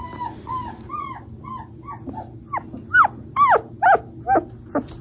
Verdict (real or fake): real